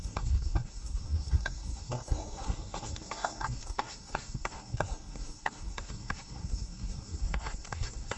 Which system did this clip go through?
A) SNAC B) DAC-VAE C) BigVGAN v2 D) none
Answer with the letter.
A